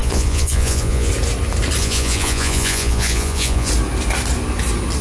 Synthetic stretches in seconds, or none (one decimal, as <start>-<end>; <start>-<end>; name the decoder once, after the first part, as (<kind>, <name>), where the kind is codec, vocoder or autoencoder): 0.0-1.1 (vocoder, Vocos); 1.8-3.7